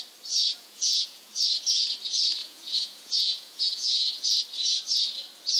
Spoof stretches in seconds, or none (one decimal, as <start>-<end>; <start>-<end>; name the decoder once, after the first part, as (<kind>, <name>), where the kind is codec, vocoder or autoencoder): 0.5-1.3 (vocoder, Vocos); 2.4-4.3

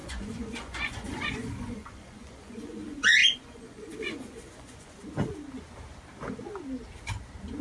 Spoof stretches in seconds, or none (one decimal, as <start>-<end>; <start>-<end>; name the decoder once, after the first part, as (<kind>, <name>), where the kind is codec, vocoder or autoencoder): 0.0-5.0 (vocoder, Vocos)

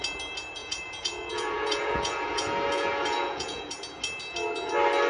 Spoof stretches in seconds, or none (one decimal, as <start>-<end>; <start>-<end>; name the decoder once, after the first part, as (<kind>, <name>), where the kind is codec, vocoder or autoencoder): 0.6-3.7 (vocoder, Vocos)

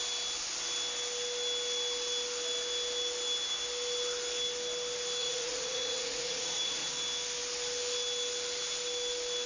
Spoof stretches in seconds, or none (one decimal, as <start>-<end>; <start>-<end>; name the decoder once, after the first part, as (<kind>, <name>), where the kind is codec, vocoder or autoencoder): 5.2-6.9 (vocoder, Vocos)

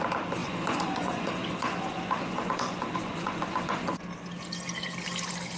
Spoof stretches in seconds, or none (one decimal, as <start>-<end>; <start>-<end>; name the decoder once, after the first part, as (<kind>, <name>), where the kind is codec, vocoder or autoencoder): 0.4-3.8 (vocoder, Vocos)

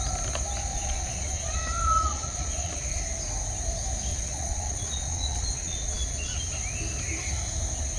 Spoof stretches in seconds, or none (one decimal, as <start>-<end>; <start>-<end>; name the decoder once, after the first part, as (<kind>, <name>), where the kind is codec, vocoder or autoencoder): 0.7-3.0 (vocoder, Vocos); 4.1-6.4

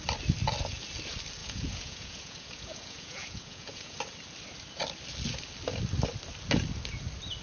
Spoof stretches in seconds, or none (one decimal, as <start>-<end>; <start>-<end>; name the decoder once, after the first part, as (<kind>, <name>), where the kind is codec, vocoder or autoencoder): 1.4-4.0 (vocoder, Vocos)